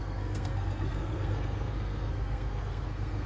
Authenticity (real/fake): fake